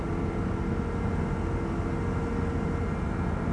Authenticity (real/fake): real